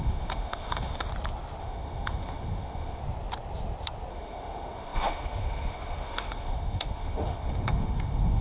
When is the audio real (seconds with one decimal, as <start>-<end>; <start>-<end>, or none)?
1.1-1.6; 3.0-4.1